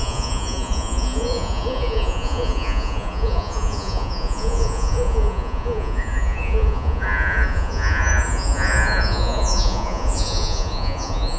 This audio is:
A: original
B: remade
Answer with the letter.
B